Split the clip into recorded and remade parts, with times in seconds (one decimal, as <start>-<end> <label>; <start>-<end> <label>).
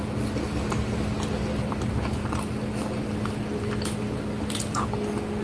0.0-5.4 recorded